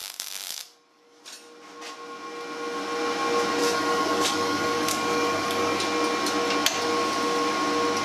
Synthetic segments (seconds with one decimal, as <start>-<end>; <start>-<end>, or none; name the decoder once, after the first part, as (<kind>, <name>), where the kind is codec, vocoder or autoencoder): 0.0-1.2 (codec, DAC); 3.6-5.8